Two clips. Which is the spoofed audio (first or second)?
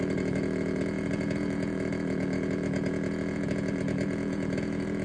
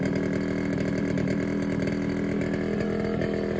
first